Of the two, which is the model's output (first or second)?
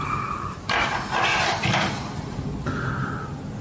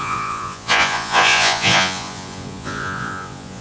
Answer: second